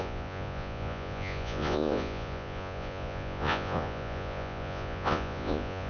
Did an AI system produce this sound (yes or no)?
yes